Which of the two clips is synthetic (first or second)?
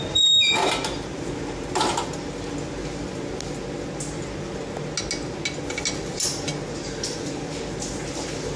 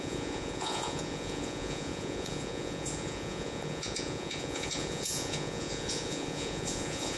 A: second